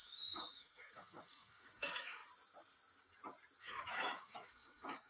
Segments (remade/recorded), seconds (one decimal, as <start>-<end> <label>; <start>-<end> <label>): 0.0-2.2 remade; 2.2-3.6 recorded; 3.6-5.1 remade